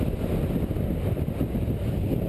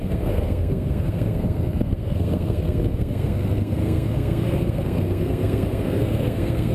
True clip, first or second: first